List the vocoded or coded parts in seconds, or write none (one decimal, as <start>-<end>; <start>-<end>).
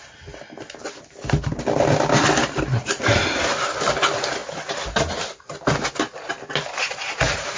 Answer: none